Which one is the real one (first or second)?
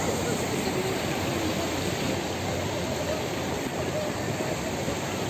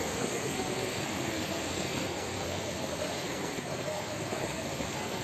first